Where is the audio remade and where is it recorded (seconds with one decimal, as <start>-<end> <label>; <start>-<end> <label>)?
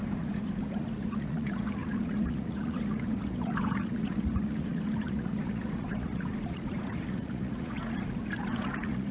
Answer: 0.0-9.1 remade